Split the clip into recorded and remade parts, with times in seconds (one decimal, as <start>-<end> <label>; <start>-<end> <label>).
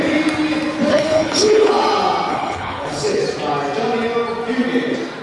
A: 0.0-0.9 recorded; 0.9-1.7 remade; 1.7-2.3 recorded; 2.3-3.2 remade; 3.2-5.2 recorded